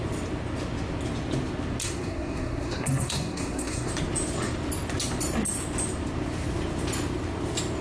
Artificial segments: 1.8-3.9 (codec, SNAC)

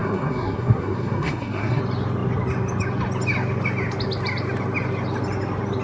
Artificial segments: 0.0-1.8 (codec, SNAC)

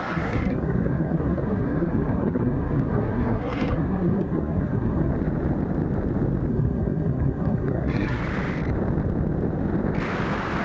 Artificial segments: 0.0-5.1 (codec, SNAC); 6.5-8.2

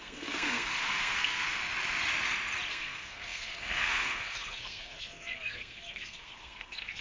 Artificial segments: 0.0-1.6 (codec, SNAC); 2.7-7.0